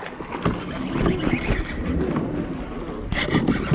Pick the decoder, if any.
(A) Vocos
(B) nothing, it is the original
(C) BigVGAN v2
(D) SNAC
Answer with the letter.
B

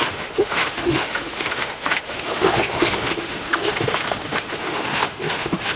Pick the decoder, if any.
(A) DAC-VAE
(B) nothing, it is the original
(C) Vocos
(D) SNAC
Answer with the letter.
A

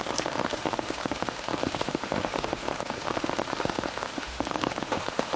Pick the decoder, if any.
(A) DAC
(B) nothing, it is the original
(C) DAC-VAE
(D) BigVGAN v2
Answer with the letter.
C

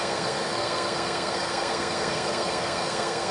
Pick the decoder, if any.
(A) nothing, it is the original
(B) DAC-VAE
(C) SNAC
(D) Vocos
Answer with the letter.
C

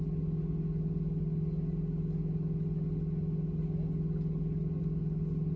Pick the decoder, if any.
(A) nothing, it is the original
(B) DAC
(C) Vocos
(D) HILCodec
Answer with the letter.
A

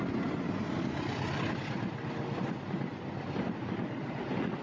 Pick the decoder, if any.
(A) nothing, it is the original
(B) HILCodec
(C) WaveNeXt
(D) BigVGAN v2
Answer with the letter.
A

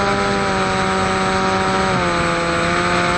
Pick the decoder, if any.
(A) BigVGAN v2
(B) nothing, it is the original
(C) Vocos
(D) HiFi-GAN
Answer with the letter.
B